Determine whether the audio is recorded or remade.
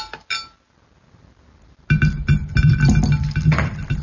recorded